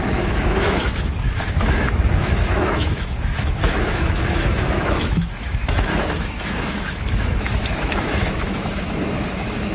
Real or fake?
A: fake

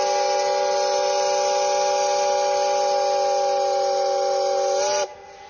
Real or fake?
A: real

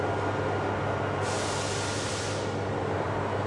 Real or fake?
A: real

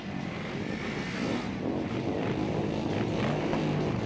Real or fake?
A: real